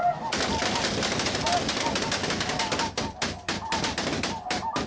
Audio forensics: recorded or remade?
recorded